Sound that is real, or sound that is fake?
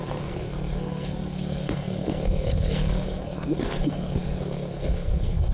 fake